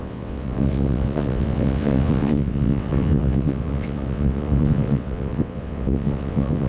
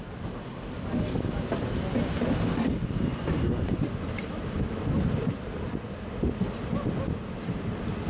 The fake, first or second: first